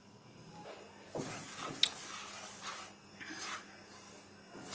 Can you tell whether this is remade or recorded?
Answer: recorded